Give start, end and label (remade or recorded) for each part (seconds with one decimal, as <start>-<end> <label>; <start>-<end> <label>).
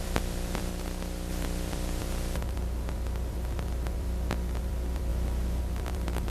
0.0-0.7 remade; 0.7-1.3 recorded; 1.3-5.1 remade; 5.1-5.6 recorded; 5.6-6.3 remade